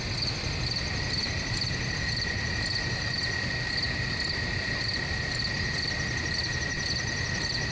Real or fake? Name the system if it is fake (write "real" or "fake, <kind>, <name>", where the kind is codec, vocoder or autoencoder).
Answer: real